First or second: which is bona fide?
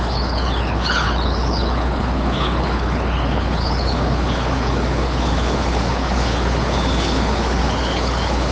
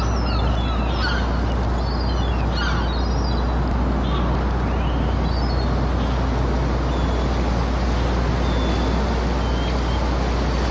second